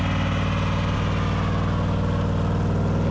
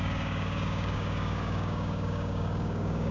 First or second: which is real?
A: first